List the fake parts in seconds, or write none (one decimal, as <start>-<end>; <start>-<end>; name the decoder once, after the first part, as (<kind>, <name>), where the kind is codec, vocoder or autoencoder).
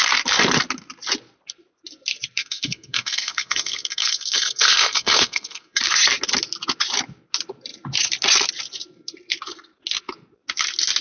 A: 2.4-5.8 (codec, SNAC)